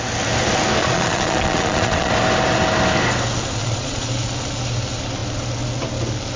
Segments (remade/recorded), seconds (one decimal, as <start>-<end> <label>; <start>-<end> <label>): 0.0-0.8 recorded; 0.8-2.1 remade; 2.1-3.6 recorded; 3.6-4.1 remade; 4.1-6.4 recorded